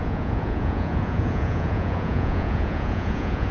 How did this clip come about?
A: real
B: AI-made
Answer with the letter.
B